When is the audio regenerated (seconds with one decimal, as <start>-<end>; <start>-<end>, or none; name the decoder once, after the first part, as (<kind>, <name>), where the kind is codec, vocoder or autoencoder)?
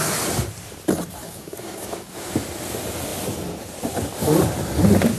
1.2-2.3 (codec, DAC)